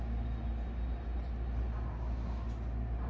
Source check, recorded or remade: recorded